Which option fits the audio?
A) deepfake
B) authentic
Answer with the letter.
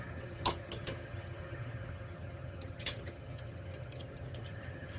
A